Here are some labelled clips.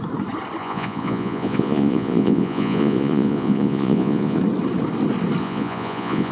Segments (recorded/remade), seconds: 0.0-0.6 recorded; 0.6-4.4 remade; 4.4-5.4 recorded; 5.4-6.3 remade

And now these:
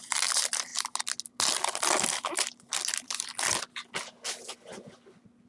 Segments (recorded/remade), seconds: 0.0-5.5 recorded